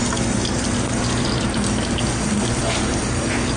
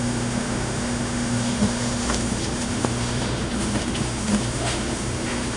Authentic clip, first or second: first